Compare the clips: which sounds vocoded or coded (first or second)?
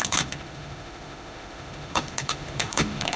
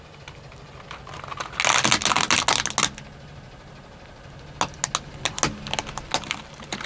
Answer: first